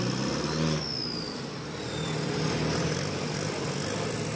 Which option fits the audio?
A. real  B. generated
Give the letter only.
A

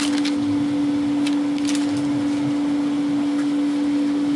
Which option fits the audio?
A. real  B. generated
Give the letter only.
A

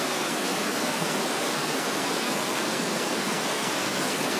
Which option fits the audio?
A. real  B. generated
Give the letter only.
B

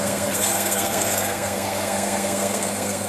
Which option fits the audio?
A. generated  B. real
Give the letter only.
A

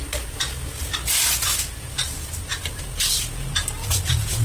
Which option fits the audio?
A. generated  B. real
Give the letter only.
B